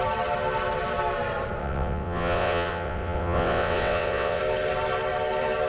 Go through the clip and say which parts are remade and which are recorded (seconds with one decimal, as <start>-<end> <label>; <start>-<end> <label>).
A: 0.0-1.6 recorded; 1.6-4.4 remade; 4.4-5.7 recorded